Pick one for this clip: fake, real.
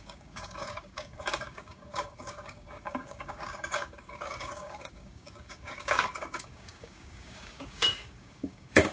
fake